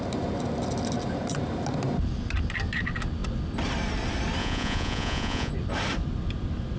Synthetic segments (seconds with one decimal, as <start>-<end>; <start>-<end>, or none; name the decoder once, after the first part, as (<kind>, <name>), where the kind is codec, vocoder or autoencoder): 4.4-5.5 (vocoder, Vocos)